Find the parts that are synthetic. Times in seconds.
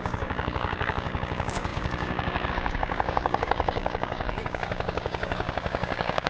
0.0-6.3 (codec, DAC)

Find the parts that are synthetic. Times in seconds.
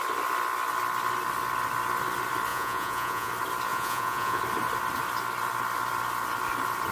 2.5-3.3 (vocoder, Vocos); 3.7-4.4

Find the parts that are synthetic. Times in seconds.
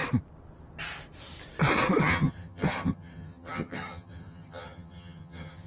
2.0-5.7 (vocoder, HiFi-GAN)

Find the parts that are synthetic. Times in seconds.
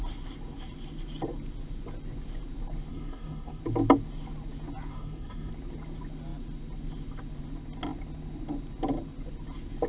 2.9-3.6 (codec, DAC); 4.9-5.5